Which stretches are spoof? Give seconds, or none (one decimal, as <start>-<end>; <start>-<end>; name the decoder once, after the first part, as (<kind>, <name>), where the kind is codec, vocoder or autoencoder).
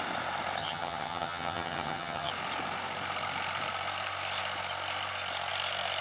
0.6-2.3 (vocoder, HiFi-GAN)